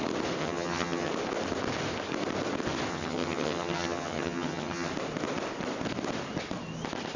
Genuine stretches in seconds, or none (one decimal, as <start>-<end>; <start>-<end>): 0.0-0.4; 1.1-2.9; 4.9-7.2